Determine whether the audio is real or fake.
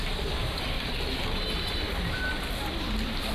real